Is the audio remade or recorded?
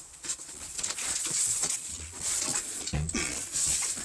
remade